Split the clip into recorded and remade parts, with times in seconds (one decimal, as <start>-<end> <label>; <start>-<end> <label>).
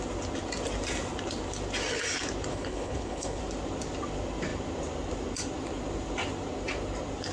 0.0-2.5 recorded; 2.5-3.4 remade; 3.4-7.3 recorded